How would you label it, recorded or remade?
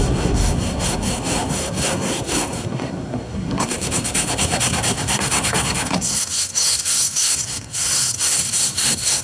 remade